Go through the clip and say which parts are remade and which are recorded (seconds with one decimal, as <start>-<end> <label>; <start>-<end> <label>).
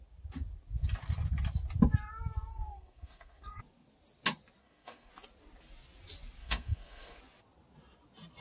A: 0.0-2.5 recorded; 2.5-3.6 remade; 3.6-4.6 recorded; 4.6-5.1 remade; 5.1-6.4 recorded; 6.4-7.2 remade; 7.2-8.4 recorded